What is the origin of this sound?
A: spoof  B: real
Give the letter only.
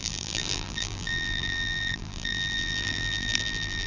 A